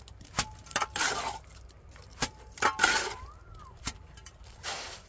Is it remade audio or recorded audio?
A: recorded